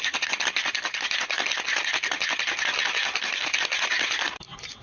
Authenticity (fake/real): real